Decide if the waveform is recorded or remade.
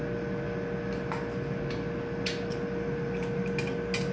recorded